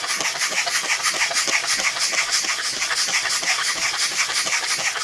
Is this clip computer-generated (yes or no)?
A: no